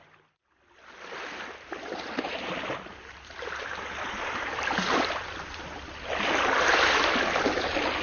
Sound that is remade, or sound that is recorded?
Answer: remade